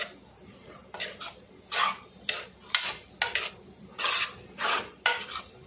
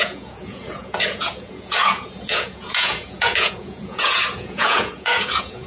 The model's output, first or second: second